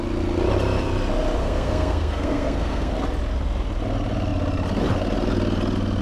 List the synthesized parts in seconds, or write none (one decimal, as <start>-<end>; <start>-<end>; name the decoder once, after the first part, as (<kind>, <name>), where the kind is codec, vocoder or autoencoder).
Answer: 1.4-2.9 (codec, SNAC)